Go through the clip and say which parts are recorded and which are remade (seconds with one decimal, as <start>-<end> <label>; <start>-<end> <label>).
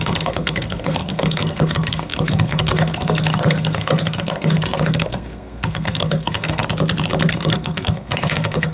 0.0-6.6 remade; 6.6-7.3 recorded; 7.3-8.7 remade